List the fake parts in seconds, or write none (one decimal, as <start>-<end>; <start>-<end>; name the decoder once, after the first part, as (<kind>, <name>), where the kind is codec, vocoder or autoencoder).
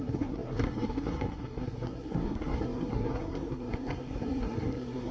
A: 0.0-5.1 (codec, SNAC)